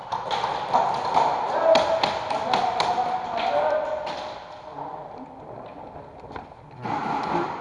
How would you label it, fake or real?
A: real